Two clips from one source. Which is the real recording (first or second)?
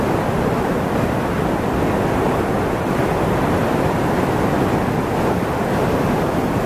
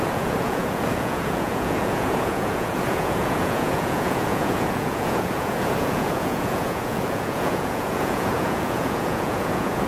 first